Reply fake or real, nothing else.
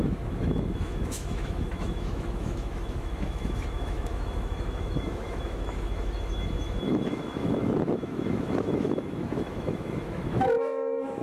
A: fake